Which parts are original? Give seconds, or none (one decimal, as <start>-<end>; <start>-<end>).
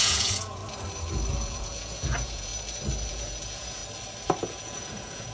0.6-1.3; 2.5-3.1; 3.8-4.4